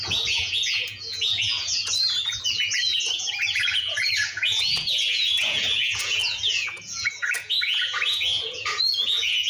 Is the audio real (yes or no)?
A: no